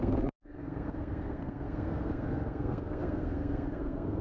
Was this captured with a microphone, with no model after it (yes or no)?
no